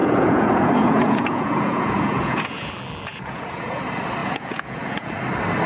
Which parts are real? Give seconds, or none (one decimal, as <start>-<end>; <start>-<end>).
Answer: 2.7-3.1; 3.8-4.2; 5.1-5.7